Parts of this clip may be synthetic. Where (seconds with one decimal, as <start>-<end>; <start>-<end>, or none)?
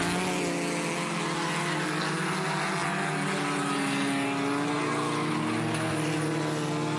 none